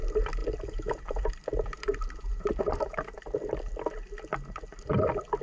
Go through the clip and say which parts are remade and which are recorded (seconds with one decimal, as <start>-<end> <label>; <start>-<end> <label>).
0.0-0.4 recorded; 0.4-3.6 remade; 3.6-5.4 recorded

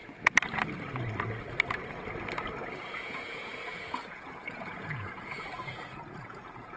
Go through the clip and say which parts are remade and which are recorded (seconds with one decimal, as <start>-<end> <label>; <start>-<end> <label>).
0.0-2.8 recorded; 2.8-6.8 remade

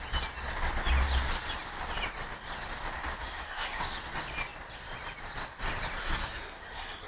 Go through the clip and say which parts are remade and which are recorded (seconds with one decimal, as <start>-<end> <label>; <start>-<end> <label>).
0.0-3.2 recorded; 3.2-3.8 remade; 3.8-6.0 recorded; 6.0-7.1 remade

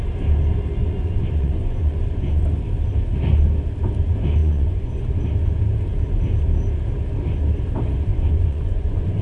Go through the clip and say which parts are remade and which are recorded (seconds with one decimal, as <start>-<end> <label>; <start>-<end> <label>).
0.0-0.8 recorded; 0.8-2.4 remade; 2.4-4.4 recorded; 4.4-5.2 remade; 5.2-8.1 recorded; 8.1-9.2 remade

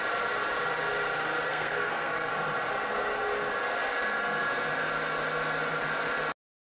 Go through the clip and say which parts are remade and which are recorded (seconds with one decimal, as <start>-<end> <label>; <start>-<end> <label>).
0.0-1.5 recorded; 1.5-2.3 remade; 2.3-6.7 recorded

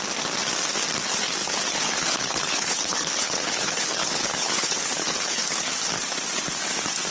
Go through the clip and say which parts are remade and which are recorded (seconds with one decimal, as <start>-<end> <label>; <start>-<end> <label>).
0.0-1.4 recorded; 1.4-5.7 remade; 5.7-7.1 recorded

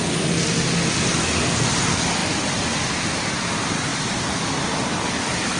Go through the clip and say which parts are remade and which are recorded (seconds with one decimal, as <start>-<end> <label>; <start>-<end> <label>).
0.0-5.6 recorded

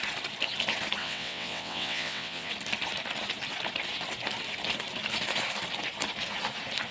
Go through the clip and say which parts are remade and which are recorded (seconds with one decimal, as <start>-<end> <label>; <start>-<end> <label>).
0.0-1.0 recorded; 1.0-2.5 remade; 2.5-6.9 recorded